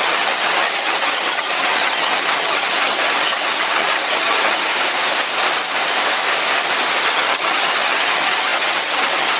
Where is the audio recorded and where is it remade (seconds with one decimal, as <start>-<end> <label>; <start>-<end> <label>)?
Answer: 0.0-4.7 remade; 4.7-7.0 recorded; 7.0-9.4 remade

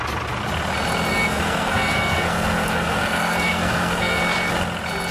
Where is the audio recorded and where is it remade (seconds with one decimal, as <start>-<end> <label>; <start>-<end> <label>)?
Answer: 0.0-1.1 recorded; 1.1-4.2 remade; 4.2-5.1 recorded

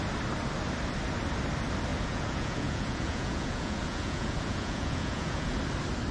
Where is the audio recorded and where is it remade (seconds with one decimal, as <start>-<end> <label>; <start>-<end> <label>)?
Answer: 0.0-1.9 recorded; 1.9-5.6 remade; 5.6-6.1 recorded

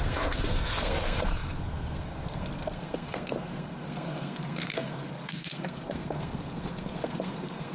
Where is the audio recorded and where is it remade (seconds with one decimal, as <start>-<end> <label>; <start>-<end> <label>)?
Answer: 0.0-7.7 remade

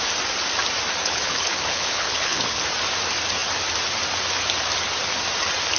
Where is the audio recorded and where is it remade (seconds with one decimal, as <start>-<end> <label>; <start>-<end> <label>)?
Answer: 0.0-1.0 recorded; 1.0-2.6 remade; 2.6-5.8 recorded

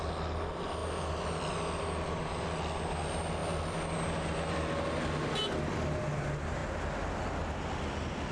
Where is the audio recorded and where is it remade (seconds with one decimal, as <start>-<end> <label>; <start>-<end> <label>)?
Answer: 0.0-8.3 recorded

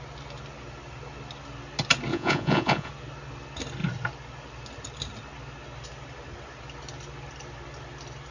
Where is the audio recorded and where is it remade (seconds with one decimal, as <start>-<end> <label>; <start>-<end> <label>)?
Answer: 0.0-2.1 recorded; 2.1-2.9 remade; 2.9-8.3 recorded